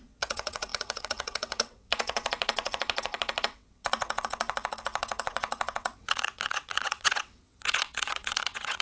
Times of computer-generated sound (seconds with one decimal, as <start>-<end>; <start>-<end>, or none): 0.0-8.8